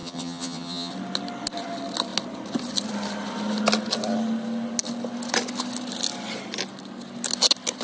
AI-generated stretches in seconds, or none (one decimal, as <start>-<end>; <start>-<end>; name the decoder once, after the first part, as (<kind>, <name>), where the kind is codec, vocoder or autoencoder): 0.0-0.9 (vocoder, HiFi-GAN)